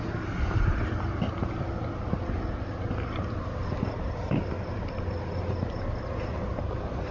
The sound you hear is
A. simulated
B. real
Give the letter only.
B